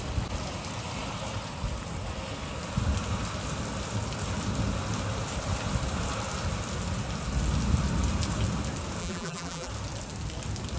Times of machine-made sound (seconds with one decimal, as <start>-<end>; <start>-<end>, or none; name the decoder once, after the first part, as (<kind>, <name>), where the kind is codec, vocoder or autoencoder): 9.0-9.7 (vocoder, BigVGAN v2)